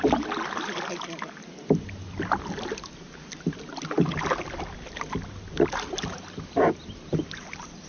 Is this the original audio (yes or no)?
yes